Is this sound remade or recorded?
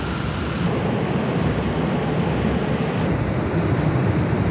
remade